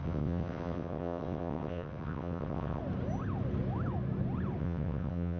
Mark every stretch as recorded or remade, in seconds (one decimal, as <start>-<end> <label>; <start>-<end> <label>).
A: 0.0-2.8 remade; 2.8-4.6 recorded; 4.6-5.4 remade